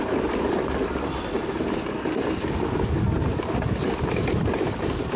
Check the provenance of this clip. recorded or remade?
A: remade